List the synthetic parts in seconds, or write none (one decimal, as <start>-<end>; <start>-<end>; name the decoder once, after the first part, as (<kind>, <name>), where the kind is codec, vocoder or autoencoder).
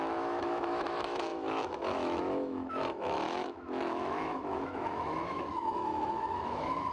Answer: 0.0-6.9 (autoencoder, DAC-VAE)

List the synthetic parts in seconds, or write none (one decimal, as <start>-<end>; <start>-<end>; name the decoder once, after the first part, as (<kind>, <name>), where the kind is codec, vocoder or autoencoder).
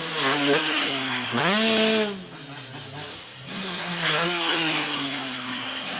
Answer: 0.7-1.4 (codec, SNAC); 3.1-6.0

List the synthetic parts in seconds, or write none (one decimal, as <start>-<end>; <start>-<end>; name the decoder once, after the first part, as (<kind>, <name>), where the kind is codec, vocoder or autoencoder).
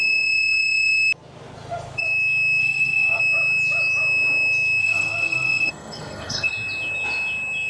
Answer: 2.6-3.2 (codec, SNAC); 4.8-6.5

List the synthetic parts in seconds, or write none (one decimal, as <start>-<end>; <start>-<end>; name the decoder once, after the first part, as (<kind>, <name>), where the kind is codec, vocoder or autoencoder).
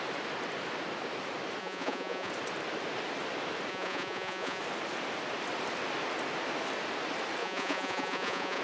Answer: 1.6-2.3 (vocoder, Vocos); 3.7-4.6; 7.4-8.6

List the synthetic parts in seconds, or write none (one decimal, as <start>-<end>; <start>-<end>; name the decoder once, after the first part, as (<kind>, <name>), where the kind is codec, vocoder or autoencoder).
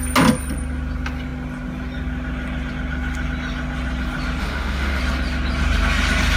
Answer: 4.4-5.0 (autoencoder, DAC-VAE)